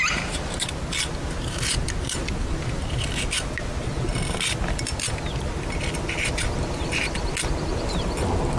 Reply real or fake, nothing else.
real